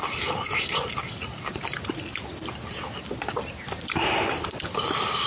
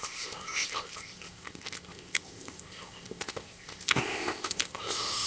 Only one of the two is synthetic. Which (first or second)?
second